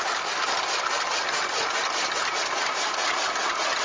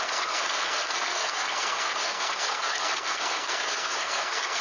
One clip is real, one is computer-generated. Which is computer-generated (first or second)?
second